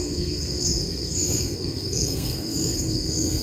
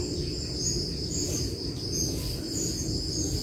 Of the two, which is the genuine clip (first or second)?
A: second